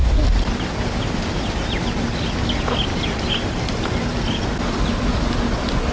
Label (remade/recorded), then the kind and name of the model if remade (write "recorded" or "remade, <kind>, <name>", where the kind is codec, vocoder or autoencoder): recorded